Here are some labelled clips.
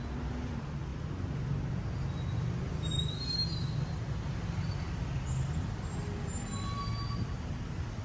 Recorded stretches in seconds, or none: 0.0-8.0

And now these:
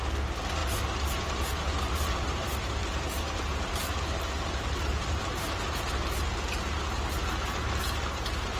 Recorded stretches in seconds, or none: 0.0-2.8; 5.2-8.6

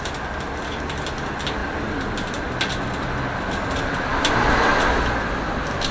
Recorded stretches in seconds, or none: 0.0-5.9

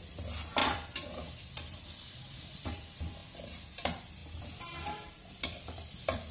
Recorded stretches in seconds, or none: 3.2-3.7